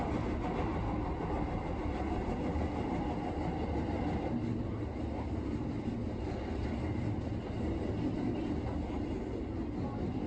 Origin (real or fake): real